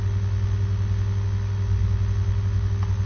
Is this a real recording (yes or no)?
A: yes